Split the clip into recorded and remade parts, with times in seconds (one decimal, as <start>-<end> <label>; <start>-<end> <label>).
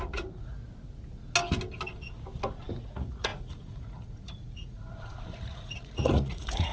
0.0-0.6 remade; 0.6-2.8 recorded; 2.8-6.7 remade